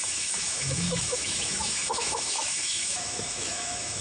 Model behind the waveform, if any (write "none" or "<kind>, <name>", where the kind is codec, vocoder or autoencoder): autoencoder, DAC-VAE